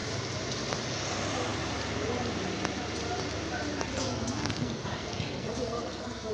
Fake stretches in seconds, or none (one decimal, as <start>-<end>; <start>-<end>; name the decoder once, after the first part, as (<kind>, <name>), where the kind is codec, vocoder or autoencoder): 3.9-6.3 (codec, SNAC)